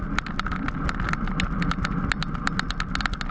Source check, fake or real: real